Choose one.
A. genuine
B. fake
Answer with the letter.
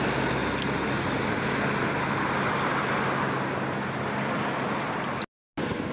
A